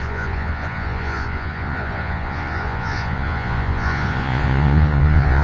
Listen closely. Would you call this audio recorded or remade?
remade